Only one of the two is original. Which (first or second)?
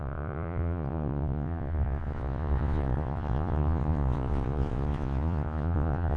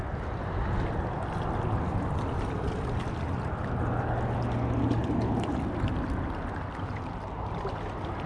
second